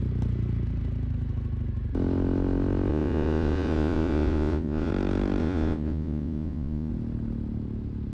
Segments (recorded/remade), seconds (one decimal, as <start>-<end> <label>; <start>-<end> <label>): 0.0-2.9 recorded; 2.9-4.9 remade; 4.9-5.4 recorded; 5.4-6.9 remade; 6.9-8.1 recorded